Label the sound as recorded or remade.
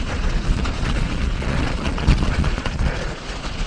remade